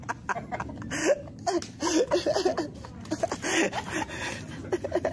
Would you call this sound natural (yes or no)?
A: yes